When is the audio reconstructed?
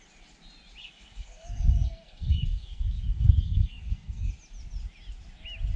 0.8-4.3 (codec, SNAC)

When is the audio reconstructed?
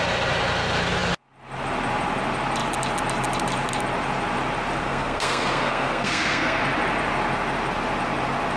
4.8-6.6 (codec, SNAC)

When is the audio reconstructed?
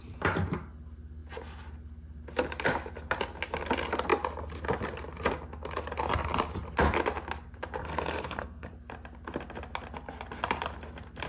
7.8-8.7 (codec, SNAC)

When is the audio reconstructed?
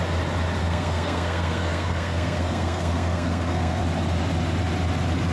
0.6-3.8 (codec, SNAC)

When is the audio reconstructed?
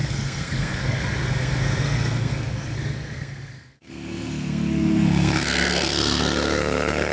0.0-7.1 (codec, SNAC)